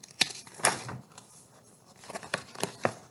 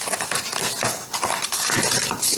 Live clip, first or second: second